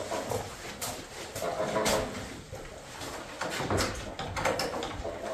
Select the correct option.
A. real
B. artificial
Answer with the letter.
A